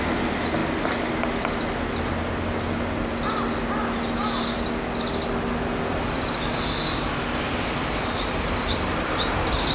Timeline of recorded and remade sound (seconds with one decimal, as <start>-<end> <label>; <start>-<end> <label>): 0.0-9.7 recorded

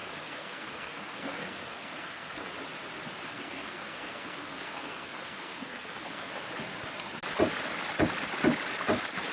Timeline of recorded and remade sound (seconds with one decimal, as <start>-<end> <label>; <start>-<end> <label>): 0.0-2.5 remade; 2.5-3.3 recorded; 3.3-6.3 remade; 6.3-9.3 recorded